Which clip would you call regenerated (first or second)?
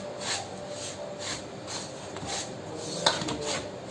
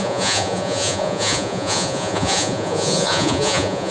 second